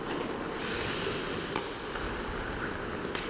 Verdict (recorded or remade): recorded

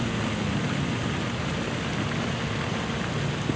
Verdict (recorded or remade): recorded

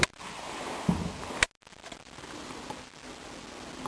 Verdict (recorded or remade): recorded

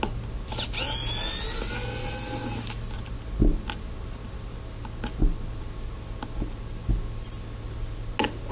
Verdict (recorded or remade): recorded